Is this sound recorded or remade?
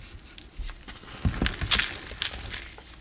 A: recorded